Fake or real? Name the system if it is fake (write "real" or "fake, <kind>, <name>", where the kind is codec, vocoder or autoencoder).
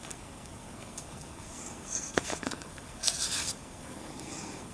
fake, codec, SNAC